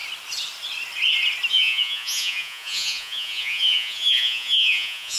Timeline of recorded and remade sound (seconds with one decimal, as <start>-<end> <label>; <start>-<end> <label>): 0.0-1.5 recorded; 1.5-5.2 remade